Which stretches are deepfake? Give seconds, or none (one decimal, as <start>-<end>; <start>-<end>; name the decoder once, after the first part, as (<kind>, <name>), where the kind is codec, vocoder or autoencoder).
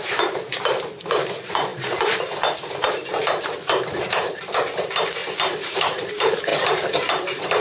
0.0-7.6 (vocoder, BigVGAN v2)